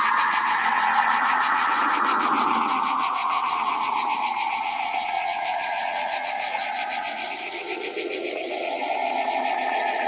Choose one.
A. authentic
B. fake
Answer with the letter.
B